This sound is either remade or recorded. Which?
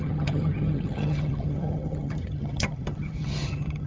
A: remade